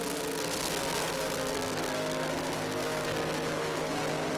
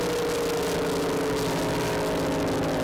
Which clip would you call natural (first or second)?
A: second